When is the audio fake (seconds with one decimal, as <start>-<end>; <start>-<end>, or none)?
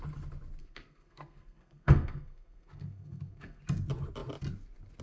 0.6-3.6